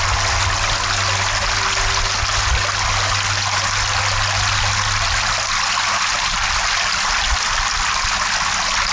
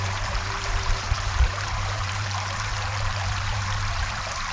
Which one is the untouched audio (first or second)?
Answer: first